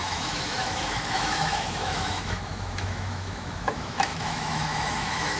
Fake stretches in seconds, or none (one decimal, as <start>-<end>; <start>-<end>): 0.0-5.4